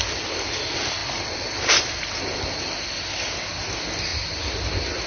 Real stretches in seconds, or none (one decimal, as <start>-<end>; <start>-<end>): 0.0-1.0; 2.4-4.1